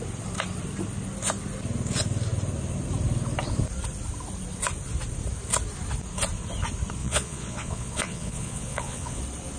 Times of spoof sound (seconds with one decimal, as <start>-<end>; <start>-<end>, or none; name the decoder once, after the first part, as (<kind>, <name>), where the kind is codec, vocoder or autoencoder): 7.0-9.2 (vocoder, Vocos)